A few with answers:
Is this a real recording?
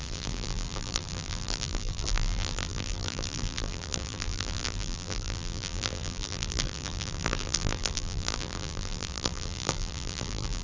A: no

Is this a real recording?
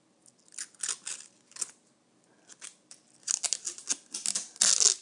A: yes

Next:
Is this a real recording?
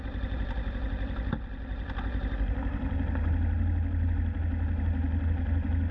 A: yes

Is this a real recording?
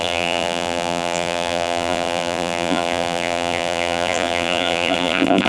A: no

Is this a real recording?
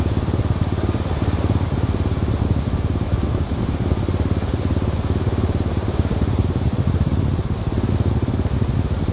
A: yes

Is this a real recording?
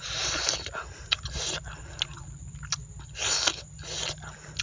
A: yes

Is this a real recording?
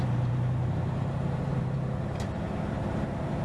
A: no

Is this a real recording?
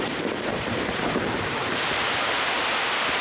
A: no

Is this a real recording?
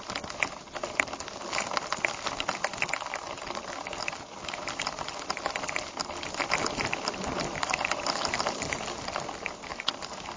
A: yes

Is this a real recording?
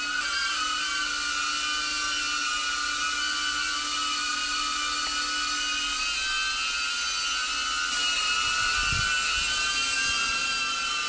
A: yes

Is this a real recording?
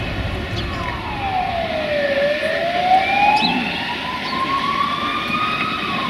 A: yes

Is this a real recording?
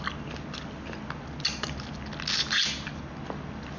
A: yes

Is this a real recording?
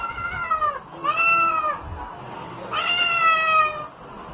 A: yes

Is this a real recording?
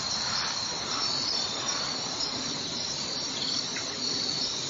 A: no